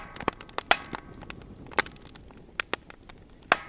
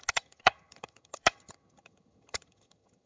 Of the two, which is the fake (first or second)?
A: second